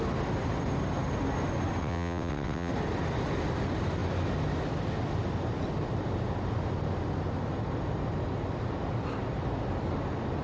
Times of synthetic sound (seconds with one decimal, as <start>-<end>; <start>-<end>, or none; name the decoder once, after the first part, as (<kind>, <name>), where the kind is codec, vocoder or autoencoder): 1.8-2.7 (vocoder, WaveNeXt)